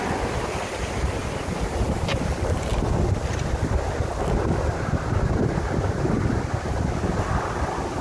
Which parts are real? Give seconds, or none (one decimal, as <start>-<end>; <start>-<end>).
0.0-8.0